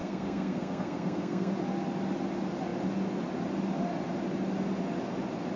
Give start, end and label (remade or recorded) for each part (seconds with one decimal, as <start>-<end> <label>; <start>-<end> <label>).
0.0-1.5 remade; 1.5-5.6 recorded